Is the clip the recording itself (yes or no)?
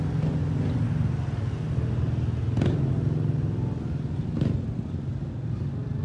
yes